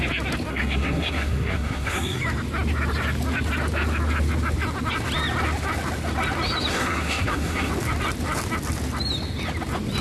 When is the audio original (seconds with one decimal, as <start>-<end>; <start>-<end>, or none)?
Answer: 0.0-0.5; 2.2-6.7; 7.7-10.0